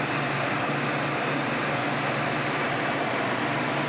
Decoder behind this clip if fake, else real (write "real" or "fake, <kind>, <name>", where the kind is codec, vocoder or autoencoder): real